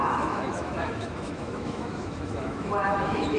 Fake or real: fake